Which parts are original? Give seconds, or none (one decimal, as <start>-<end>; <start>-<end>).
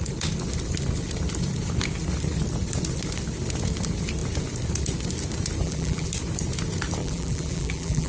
0.0-5.6; 6.1-7.0